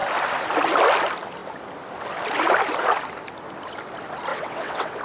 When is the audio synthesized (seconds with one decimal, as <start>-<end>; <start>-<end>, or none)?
4.3-5.0